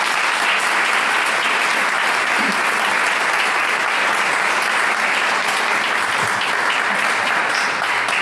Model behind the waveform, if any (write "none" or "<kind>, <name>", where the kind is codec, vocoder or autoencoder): none